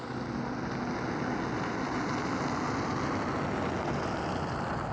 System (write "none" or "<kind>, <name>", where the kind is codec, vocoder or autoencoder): none